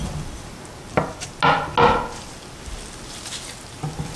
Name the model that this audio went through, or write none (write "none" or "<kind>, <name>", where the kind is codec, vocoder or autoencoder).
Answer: none